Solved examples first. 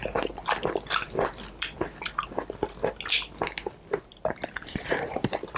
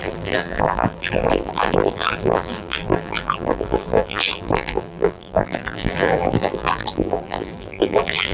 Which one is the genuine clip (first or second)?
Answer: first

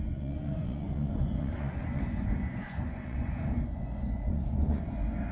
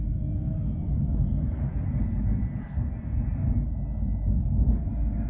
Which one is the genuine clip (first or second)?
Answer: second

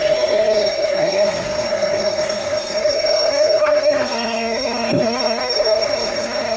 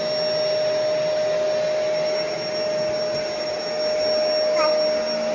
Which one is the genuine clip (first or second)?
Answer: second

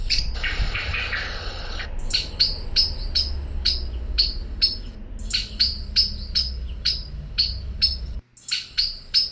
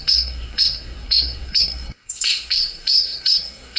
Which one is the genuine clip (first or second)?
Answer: first